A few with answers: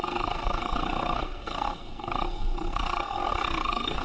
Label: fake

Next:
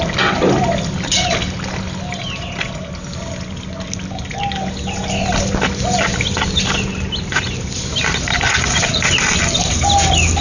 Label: real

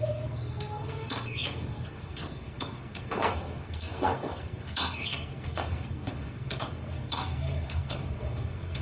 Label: fake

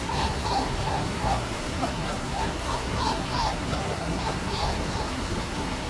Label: fake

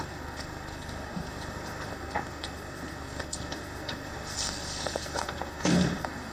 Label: fake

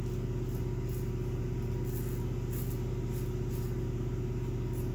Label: real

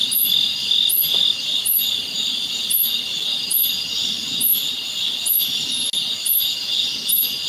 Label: real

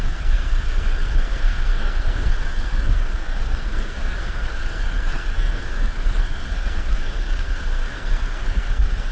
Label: fake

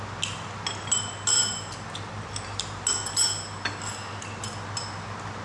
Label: real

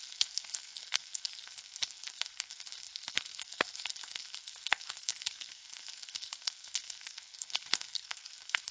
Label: fake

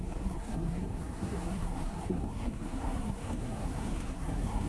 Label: fake